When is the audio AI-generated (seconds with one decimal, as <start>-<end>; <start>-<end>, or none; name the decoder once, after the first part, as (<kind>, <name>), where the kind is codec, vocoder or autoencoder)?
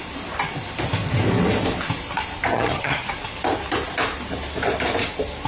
2.5-3.1 (vocoder, HiFi-GAN)